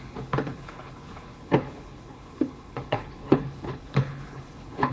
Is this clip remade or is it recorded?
remade